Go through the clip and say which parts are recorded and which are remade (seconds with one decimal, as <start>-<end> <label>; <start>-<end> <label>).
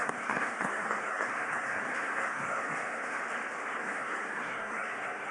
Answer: 0.0-3.2 remade; 3.2-3.8 recorded; 3.8-5.3 remade